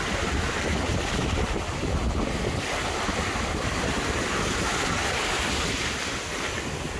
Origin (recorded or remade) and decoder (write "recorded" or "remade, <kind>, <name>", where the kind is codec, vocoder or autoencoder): recorded